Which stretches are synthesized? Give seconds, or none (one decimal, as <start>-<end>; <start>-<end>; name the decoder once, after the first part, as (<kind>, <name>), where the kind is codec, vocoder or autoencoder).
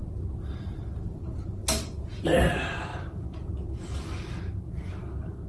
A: 0.0-1.2 (vocoder, BigVGAN v2); 1.6-2.5